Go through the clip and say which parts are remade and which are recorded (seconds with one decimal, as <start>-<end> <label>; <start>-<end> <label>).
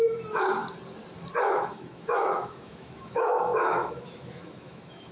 0.0-0.6 remade; 0.6-1.4 recorded; 1.4-5.1 remade